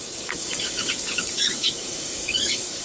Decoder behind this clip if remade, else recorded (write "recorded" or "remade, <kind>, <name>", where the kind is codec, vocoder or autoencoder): remade, codec, DAC